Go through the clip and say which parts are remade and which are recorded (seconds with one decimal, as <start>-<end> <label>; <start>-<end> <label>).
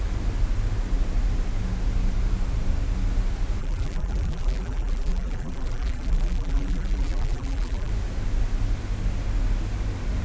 0.0-3.6 recorded; 3.6-7.9 remade; 7.9-10.2 recorded